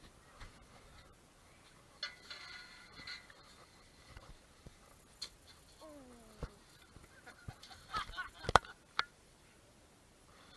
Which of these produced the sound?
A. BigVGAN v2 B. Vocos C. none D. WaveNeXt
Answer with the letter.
C